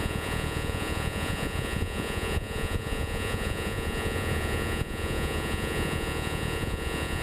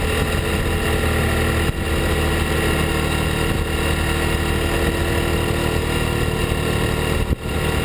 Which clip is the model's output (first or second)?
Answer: first